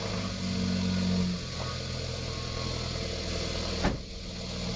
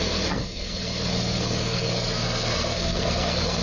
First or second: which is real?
first